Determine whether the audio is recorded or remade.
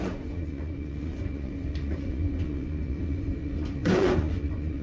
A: remade